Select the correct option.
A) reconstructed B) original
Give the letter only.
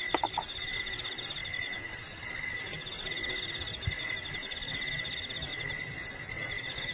B